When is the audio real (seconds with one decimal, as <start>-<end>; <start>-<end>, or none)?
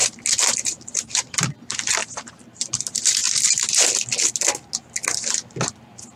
1.3-2.0; 2.7-6.2